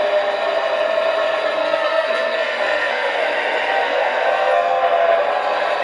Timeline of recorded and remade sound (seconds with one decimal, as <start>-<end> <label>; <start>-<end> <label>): 0.0-1.6 recorded; 1.6-3.2 remade; 3.2-3.8 recorded; 3.8-4.8 remade; 4.8-5.8 recorded